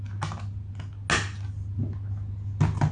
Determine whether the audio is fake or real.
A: real